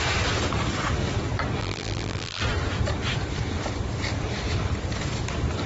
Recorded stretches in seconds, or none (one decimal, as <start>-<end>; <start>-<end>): 0.0-1.6; 2.4-5.7